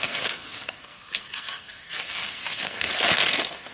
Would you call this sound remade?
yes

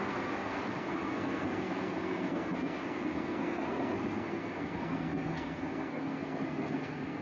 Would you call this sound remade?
yes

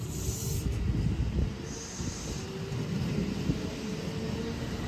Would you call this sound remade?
no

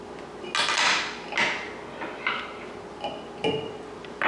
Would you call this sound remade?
no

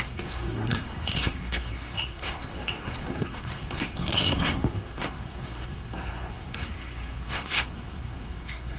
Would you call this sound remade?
yes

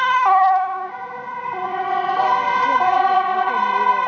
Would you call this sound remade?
no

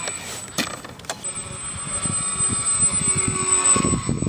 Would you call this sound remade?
no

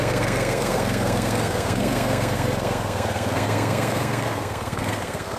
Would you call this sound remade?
yes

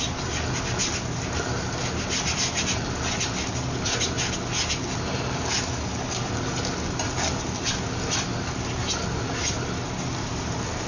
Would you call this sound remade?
no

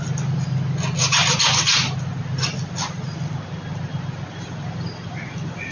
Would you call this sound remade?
no